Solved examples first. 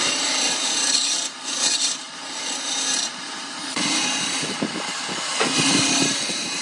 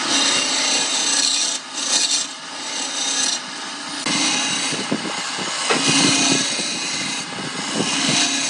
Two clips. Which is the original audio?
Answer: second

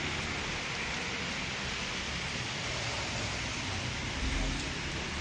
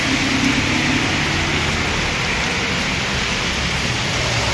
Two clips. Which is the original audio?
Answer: second